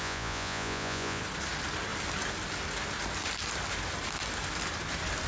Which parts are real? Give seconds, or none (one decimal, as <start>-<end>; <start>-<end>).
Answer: 1.2-5.3